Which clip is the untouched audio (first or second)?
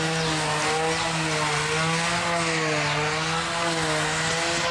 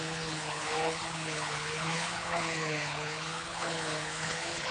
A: first